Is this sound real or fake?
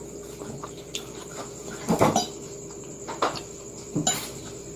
real